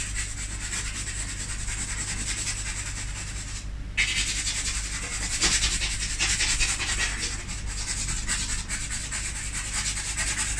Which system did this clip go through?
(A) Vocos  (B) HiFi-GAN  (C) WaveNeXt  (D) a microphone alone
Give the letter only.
D